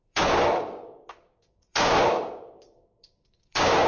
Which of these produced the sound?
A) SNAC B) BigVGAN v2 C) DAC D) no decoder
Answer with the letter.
C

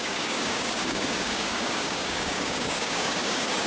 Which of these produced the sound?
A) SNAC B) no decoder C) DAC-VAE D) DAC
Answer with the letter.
D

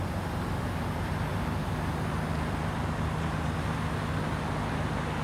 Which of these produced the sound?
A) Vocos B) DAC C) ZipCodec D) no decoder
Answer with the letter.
D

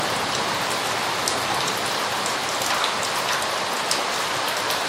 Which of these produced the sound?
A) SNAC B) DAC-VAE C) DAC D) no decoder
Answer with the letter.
D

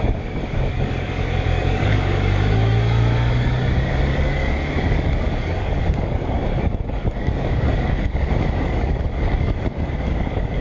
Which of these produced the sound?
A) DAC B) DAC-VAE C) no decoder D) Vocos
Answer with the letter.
A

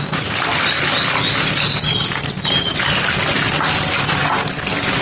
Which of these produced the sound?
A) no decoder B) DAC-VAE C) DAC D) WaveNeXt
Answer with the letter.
A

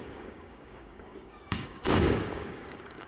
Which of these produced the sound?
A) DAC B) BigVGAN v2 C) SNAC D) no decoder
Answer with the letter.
A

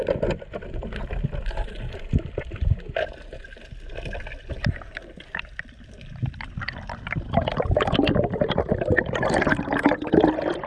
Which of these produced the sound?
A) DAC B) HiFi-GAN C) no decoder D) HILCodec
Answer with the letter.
C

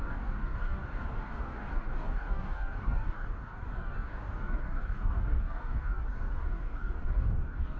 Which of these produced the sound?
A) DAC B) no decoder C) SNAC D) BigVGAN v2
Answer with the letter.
A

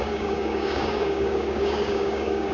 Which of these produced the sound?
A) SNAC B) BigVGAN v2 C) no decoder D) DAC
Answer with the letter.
D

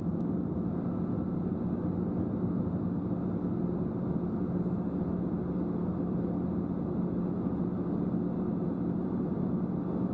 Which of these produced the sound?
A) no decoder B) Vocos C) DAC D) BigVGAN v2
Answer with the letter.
A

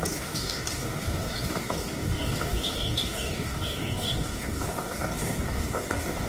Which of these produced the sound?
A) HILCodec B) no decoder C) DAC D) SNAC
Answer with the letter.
C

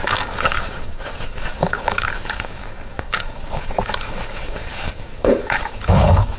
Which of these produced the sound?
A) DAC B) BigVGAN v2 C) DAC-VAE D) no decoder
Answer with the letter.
A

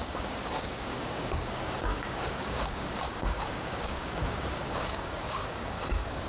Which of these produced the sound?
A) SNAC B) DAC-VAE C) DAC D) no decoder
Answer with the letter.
C